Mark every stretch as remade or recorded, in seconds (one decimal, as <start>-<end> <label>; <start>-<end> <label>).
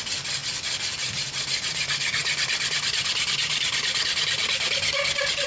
0.0-5.5 recorded